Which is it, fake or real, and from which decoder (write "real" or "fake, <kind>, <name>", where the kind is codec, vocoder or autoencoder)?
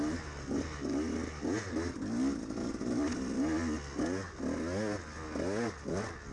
real